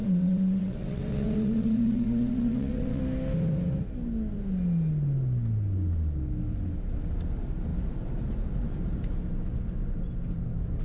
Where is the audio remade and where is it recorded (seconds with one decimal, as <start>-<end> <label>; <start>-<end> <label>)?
0.0-3.0 remade; 3.0-10.8 recorded